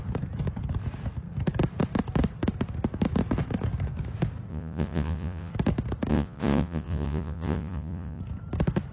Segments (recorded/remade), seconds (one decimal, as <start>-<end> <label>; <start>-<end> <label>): 0.0-4.5 recorded; 4.5-5.5 remade; 5.5-6.1 recorded; 6.1-8.2 remade; 8.2-8.9 recorded